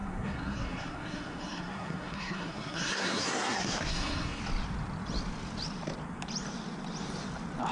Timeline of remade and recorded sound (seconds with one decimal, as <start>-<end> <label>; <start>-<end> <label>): 0.0-4.4 remade; 4.4-7.7 recorded